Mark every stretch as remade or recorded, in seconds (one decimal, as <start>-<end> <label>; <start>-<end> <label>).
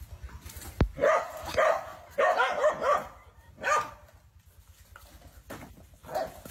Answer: 0.0-6.5 recorded